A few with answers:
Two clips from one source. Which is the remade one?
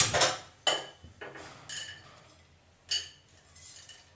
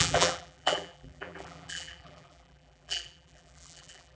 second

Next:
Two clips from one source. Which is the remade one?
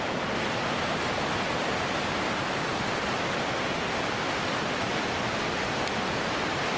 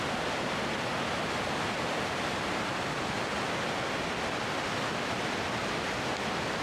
first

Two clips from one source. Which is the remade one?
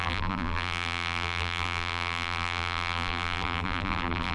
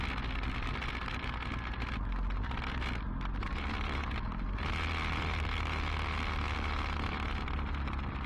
first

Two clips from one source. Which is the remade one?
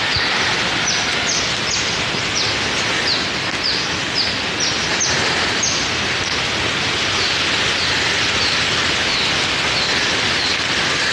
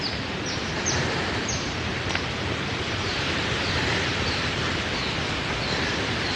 second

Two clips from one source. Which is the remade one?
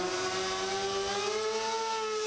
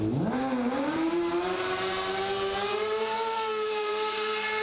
second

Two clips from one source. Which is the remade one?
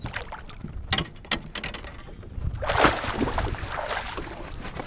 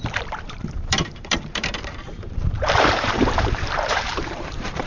second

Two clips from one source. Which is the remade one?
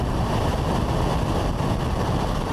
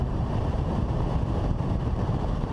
second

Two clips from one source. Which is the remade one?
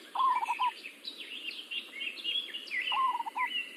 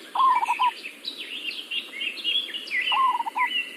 first